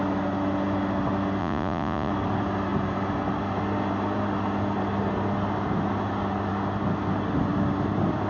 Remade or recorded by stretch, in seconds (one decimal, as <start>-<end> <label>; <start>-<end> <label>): 0.0-1.4 recorded; 1.4-2.1 remade; 2.1-8.3 recorded